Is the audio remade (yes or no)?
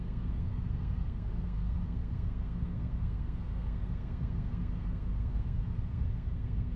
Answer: yes